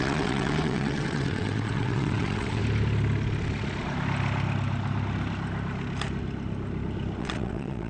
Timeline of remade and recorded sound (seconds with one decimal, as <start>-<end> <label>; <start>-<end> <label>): 0.0-2.6 remade; 2.6-7.2 recorded; 7.2-7.9 remade

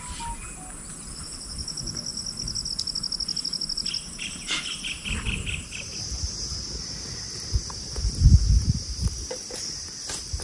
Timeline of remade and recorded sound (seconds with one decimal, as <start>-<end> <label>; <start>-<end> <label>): 0.0-10.4 recorded

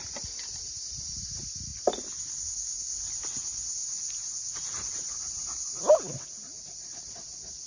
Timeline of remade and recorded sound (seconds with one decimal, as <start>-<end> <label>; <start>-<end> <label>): 0.0-7.7 recorded

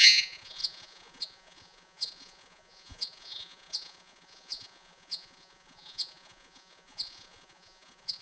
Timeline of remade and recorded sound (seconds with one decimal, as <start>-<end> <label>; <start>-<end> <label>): 0.0-8.2 remade